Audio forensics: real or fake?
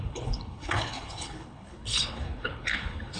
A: fake